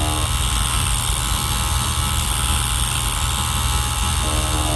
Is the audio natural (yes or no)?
yes